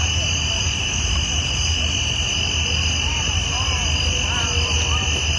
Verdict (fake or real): real